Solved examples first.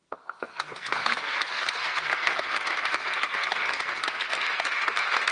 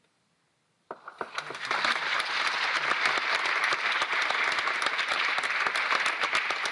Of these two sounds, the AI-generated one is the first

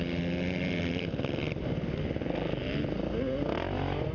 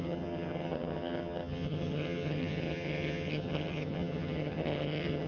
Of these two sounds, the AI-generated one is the second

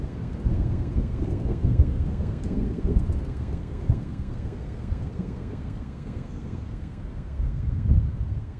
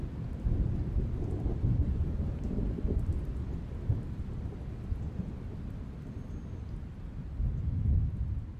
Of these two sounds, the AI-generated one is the first